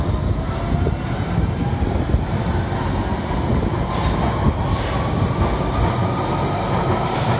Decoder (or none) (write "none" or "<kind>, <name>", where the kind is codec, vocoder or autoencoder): none